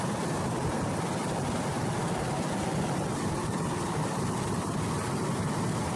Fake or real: real